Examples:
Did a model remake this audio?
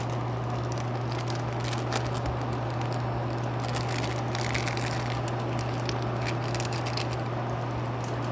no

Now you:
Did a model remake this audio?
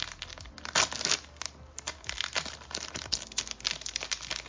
no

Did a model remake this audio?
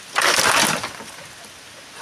no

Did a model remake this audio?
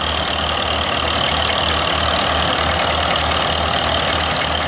no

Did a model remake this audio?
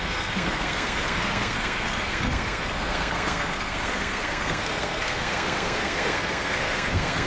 yes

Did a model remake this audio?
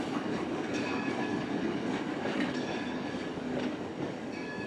yes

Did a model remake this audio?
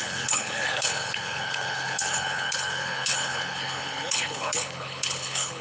yes